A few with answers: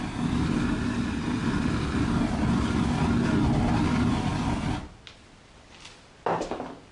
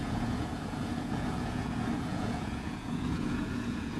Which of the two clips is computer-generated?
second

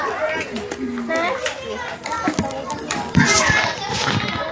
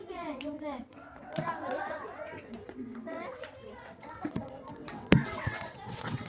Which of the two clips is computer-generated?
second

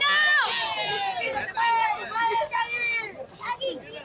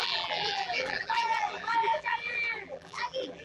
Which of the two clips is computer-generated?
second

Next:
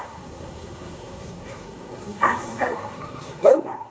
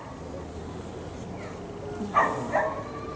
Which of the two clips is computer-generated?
first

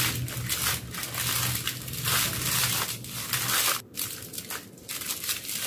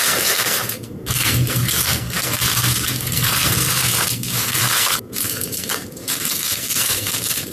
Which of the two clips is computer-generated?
second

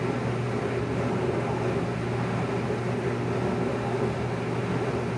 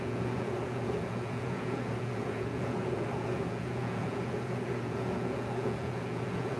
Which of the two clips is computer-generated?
second